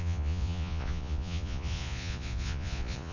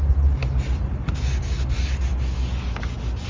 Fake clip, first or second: first